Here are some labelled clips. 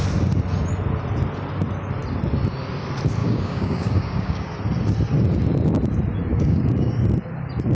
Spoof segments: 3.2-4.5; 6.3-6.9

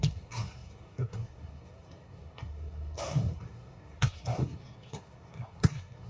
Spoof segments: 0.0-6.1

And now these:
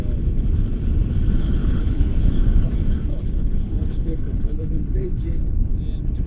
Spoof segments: 1.6-2.3; 3.1-5.7